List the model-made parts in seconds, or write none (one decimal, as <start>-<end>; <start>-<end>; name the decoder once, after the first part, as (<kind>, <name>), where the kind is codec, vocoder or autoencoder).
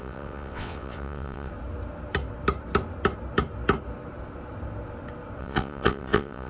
0.0-1.5 (vocoder, WaveNeXt); 5.4-6.5